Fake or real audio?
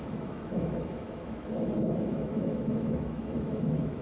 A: fake